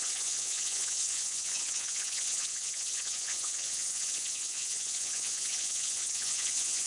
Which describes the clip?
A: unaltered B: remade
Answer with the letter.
B